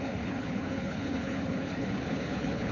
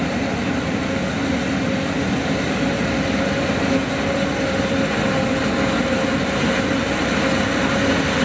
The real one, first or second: second